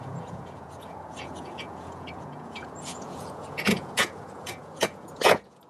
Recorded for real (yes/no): no